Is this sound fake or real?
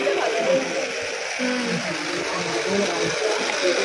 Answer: real